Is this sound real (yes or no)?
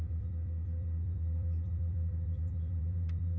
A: no